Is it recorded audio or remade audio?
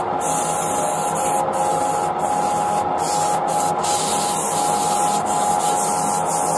recorded